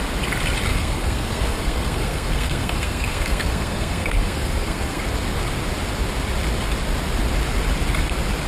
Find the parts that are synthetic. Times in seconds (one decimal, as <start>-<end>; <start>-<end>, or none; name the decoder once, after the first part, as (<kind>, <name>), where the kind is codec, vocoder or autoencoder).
0.7-5.0 (codec, SNAC)